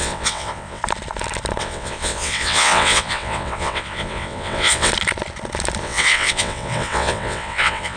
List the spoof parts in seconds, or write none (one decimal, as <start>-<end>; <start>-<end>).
0.0-0.8; 1.6-4.9; 5.8-8.0